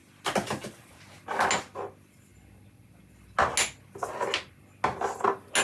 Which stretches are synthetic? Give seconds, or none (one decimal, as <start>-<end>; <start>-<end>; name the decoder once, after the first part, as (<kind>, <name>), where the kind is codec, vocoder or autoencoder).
none